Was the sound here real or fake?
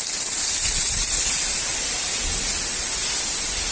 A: real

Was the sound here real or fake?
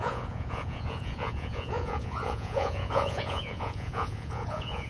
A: fake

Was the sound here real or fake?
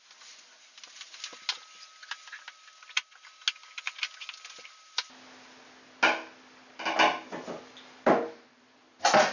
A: real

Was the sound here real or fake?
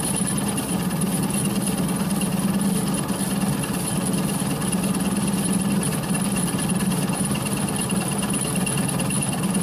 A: real